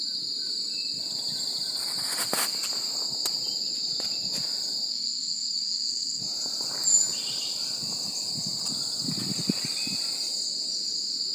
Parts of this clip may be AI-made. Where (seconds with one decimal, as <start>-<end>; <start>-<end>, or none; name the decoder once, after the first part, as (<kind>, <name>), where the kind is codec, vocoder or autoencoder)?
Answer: 4.9-6.2 (codec, SNAC)